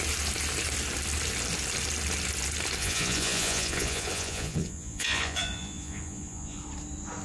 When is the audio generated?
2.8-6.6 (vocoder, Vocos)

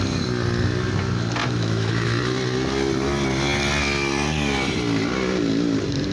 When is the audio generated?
1.4-2.2 (autoencoder, DAC-VAE)

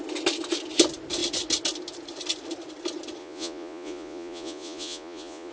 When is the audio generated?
3.2-5.5 (vocoder, Vocos)

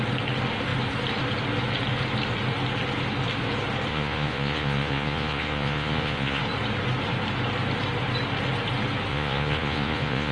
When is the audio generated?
3.9-6.4 (vocoder, Vocos); 9.1-10.3

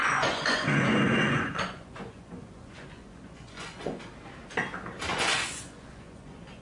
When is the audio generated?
0.0-4.0 (vocoder, Vocos); 5.1-6.6

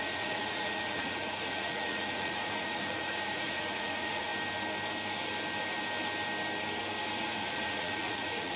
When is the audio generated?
0.0-4.3 (vocoder, Vocos); 7.2-8.6

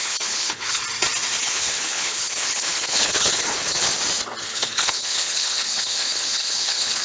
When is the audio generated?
0.0-0.8 (codec, HILCodec); 1.4-3.9; 4.4-7.0